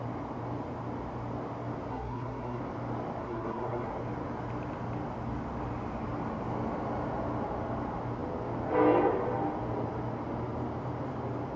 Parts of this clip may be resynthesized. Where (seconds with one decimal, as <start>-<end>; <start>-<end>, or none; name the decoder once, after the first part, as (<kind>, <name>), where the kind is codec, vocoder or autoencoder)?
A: 1.9-2.6 (codec, SNAC); 3.2-3.9